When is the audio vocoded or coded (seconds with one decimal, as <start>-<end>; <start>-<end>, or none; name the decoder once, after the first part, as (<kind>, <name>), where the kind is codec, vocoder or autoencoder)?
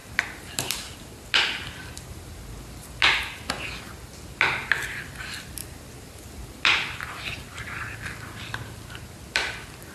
none